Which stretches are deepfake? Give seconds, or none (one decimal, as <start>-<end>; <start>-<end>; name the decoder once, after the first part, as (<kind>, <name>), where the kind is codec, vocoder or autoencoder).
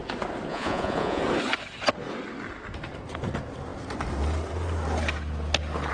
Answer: 0.5-1.2 (vocoder, Vocos)